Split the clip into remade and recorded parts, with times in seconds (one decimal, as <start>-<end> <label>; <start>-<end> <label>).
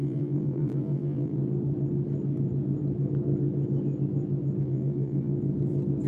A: 0.0-1.4 remade; 1.4-4.6 recorded; 4.6-5.3 remade; 5.3-6.1 recorded